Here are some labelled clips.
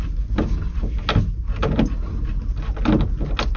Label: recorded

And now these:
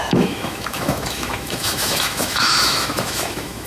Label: remade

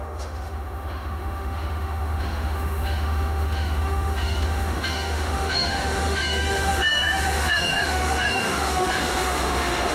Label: remade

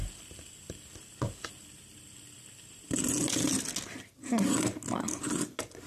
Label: recorded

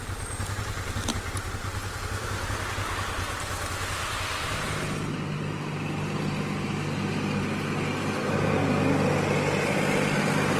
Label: recorded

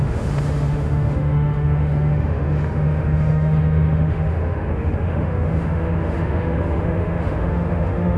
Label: remade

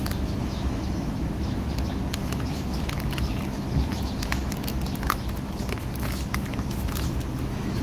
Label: remade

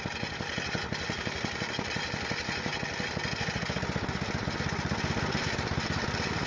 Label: recorded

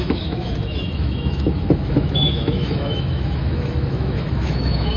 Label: remade